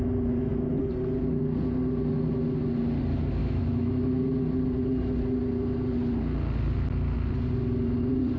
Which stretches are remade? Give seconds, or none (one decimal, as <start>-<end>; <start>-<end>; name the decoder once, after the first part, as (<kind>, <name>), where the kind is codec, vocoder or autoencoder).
3.4-4.2 (autoencoder, DAC-VAE)